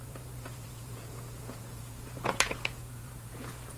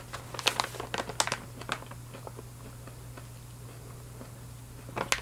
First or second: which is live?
second